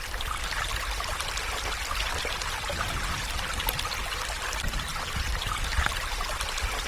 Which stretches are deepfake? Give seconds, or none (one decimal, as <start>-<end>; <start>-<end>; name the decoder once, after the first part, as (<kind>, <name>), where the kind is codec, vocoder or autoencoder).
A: none